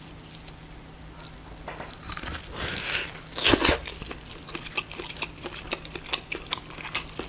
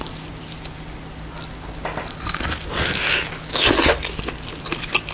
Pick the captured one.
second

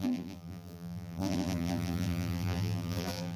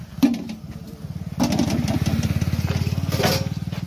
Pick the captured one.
second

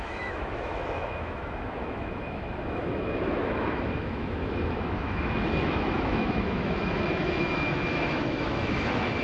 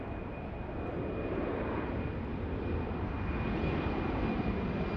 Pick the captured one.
second